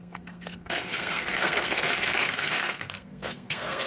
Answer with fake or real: fake